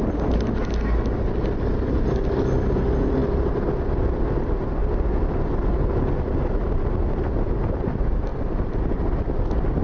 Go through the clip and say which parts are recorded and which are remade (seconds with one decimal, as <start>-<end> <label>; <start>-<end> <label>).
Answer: 0.0-0.6 remade; 0.6-9.8 recorded